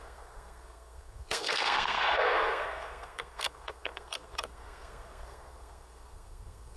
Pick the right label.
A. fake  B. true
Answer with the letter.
A